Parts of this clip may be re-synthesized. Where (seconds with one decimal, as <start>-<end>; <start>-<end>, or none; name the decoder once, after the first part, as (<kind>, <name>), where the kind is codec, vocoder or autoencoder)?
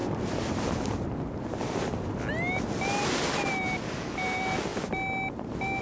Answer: none